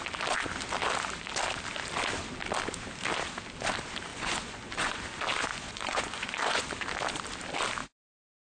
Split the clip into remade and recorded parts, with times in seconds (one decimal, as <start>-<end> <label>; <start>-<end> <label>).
0.0-4.1 recorded; 4.1-5.0 remade; 5.0-5.5 recorded; 5.5-6.6 remade; 6.6-8.6 recorded